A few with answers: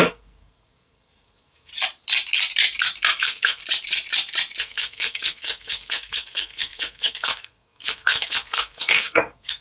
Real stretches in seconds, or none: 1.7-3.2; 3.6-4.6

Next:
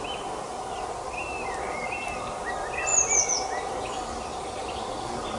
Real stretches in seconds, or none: 0.0-5.4